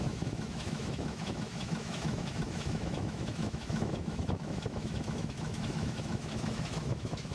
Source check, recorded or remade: remade